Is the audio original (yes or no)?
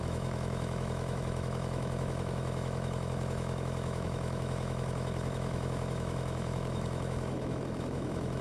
no